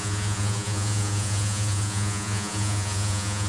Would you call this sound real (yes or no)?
no